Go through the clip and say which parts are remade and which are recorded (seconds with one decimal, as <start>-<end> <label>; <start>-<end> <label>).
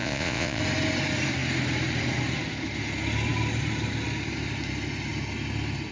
0.0-0.6 remade; 0.6-5.9 recorded